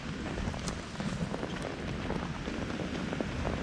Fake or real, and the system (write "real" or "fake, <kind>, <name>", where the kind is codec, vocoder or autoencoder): fake, vocoder, BigVGAN v2